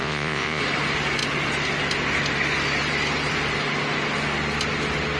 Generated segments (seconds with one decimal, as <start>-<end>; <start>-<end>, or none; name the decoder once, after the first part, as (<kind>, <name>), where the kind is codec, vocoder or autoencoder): 0.0-0.6 (vocoder, Vocos)